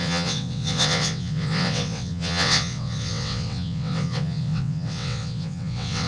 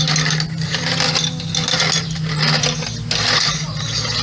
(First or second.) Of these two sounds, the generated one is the first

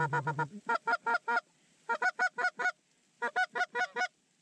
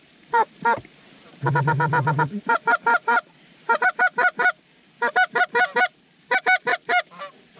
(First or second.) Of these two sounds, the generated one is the second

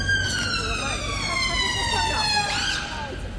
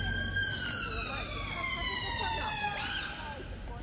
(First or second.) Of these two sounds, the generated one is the second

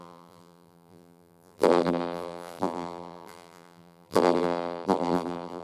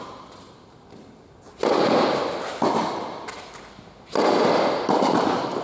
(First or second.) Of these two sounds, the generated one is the first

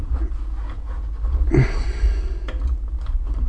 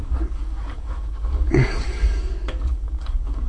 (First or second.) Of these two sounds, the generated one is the second